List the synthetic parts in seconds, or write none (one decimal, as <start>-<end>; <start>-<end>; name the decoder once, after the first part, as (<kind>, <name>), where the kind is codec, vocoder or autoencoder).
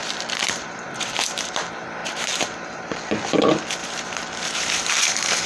0.0-1.5 (vocoder, BigVGAN v2); 2.0-3.0; 3.8-5.5